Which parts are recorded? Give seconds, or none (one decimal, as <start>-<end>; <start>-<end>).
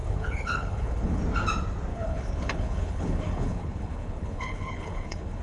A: 1.2-1.9